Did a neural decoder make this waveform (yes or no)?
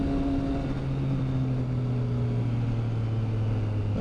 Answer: no